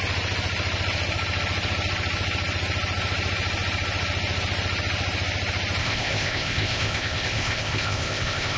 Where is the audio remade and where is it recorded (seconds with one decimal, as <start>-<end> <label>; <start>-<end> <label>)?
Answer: 0.0-5.8 recorded; 5.8-8.6 remade